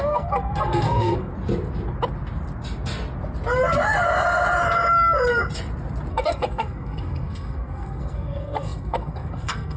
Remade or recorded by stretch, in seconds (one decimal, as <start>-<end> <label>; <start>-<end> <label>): 0.0-1.3 remade; 1.3-6.1 recorded; 6.1-9.8 remade